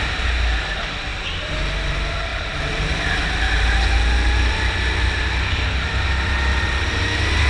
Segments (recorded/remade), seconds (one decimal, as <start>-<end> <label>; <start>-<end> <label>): 0.0-1.1 recorded; 1.1-1.6 remade; 1.6-2.3 recorded; 2.3-3.2 remade; 3.2-7.5 recorded